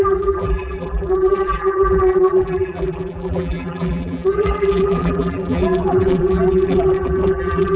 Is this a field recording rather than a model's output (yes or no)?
no